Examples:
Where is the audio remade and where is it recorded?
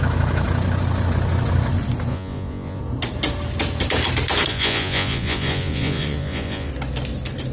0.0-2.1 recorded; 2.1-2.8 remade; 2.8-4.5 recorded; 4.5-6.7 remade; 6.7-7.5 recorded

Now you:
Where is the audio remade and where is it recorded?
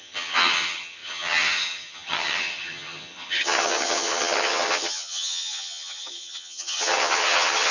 0.0-7.7 remade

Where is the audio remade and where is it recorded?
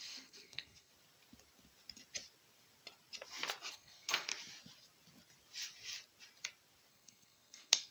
0.0-0.9 remade; 0.9-3.7 recorded; 3.7-4.3 remade; 4.3-6.9 recorded; 6.9-7.9 remade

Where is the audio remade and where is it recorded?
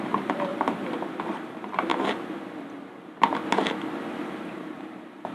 0.0-0.5 remade; 0.5-1.2 recorded; 1.2-1.9 remade; 1.9-4.2 recorded; 4.2-5.3 remade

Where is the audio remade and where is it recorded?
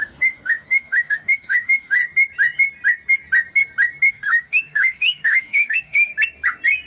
0.0-2.0 remade; 2.0-4.1 recorded; 4.1-6.1 remade; 6.1-6.9 recorded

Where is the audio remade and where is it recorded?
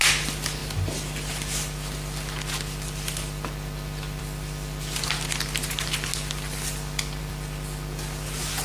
0.0-8.6 recorded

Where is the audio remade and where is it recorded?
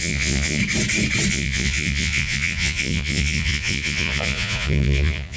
0.0-0.6 remade; 0.6-1.3 recorded; 1.3-5.4 remade